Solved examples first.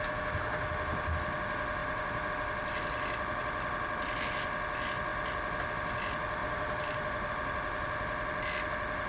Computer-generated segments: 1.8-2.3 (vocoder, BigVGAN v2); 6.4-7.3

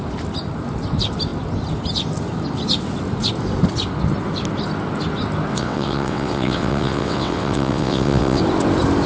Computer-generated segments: 5.5-8.4 (vocoder, WaveNeXt)